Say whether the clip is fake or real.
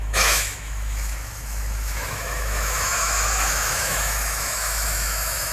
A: fake